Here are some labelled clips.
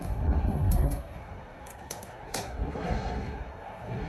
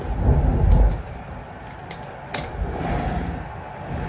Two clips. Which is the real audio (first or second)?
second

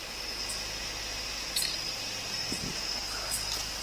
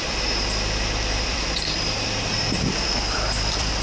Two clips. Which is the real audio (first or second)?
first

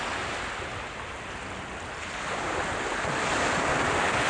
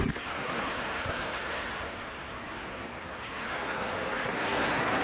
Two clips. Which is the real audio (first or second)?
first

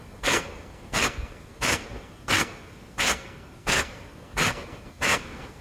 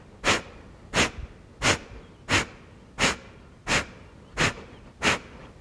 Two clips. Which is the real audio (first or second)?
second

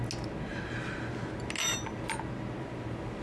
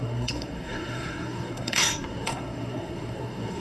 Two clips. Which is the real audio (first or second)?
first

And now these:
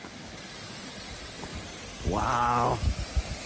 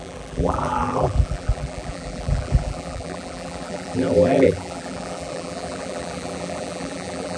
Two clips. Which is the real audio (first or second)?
first